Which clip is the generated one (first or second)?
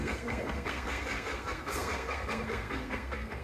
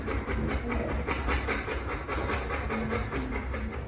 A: first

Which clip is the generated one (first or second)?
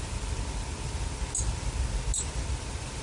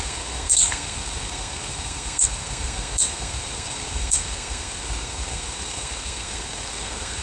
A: second